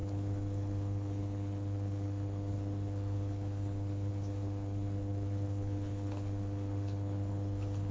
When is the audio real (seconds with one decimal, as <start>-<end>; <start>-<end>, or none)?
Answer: none